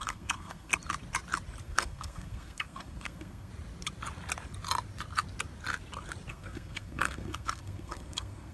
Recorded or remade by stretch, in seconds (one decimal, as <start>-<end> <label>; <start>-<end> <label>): 0.0-0.7 remade; 0.7-1.6 recorded; 1.6-3.5 remade; 3.5-6.3 recorded; 6.3-8.5 remade